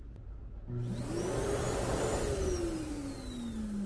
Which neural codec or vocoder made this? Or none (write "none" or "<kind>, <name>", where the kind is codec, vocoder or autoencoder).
none